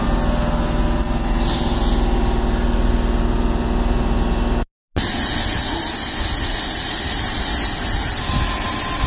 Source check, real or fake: real